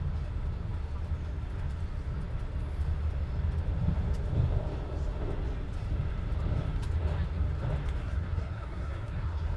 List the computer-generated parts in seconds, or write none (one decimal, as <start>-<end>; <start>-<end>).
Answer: 8.0-9.6